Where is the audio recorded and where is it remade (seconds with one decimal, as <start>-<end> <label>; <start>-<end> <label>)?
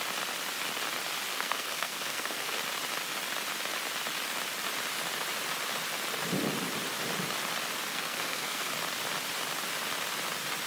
0.0-1.3 recorded; 1.3-2.6 remade; 2.6-7.9 recorded; 7.9-8.7 remade; 8.7-10.7 recorded